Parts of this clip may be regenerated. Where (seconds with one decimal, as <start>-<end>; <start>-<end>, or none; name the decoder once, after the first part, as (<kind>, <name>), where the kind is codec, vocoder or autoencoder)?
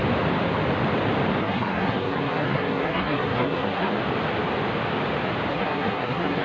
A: 1.4-4.0 (codec, SNAC); 5.5-6.4